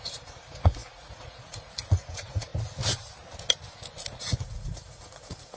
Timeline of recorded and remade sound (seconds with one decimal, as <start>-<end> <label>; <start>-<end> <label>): 0.0-2.5 remade; 2.5-4.2 recorded; 4.2-5.6 remade